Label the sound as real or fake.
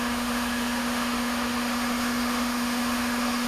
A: fake